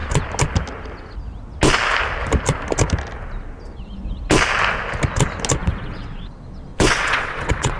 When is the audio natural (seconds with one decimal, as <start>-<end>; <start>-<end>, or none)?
0.0-5.6; 6.3-6.7